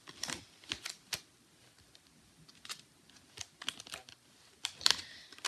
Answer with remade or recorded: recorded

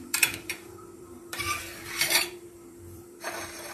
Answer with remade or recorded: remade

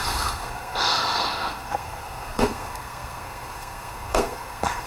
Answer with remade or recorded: remade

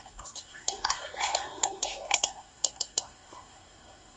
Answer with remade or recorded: remade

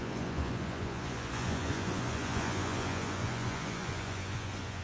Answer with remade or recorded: remade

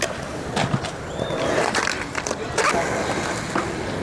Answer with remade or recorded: recorded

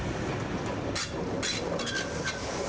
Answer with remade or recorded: recorded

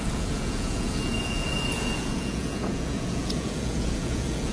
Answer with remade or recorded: remade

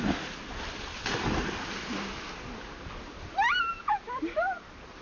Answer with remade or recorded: recorded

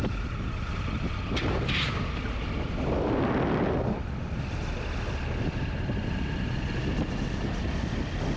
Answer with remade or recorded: recorded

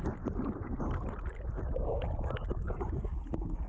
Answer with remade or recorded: recorded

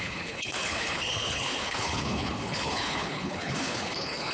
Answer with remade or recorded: remade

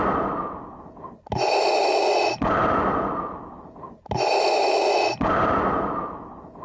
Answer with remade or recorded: recorded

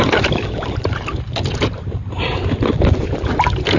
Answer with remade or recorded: recorded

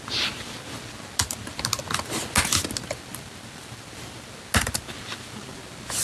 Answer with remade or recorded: recorded